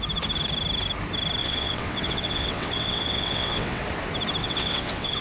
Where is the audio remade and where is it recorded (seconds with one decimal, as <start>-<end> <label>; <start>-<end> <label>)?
0.0-1.4 recorded; 1.4-3.8 remade; 3.8-4.4 recorded; 4.4-5.2 remade